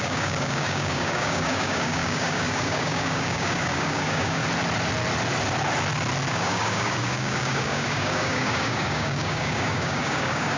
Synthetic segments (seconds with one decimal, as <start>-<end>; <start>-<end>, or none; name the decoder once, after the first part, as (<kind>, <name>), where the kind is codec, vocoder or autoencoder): 0.0-4.4 (codec, DAC); 6.3-10.6

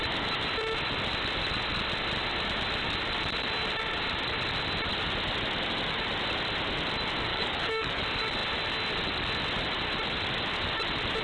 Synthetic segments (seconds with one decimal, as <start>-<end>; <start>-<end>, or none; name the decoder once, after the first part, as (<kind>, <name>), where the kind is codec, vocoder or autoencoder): 7.3-8.0 (codec, DAC)

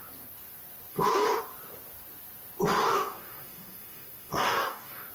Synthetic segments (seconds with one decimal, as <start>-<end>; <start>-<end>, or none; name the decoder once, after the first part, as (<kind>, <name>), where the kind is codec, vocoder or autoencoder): 0.9-1.4 (codec, DAC); 2.8-5.1

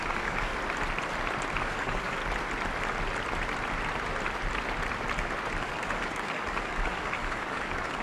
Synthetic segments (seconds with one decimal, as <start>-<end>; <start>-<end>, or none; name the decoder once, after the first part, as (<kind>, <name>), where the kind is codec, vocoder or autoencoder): 0.0-0.5 (codec, DAC); 1.6-2.2; 5.6-8.0

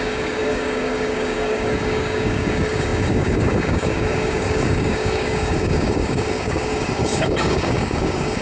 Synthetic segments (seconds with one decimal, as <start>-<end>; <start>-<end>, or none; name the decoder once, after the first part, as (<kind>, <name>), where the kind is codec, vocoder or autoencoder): 0.0-8.4 (codec, DAC)